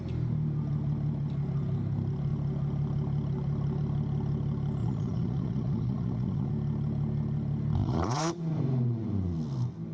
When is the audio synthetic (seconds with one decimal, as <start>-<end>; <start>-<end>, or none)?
4.8-6.5; 7.8-8.6